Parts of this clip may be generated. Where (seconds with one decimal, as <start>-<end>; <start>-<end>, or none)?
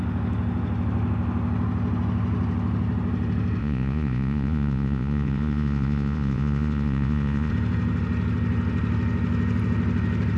3.6-7.5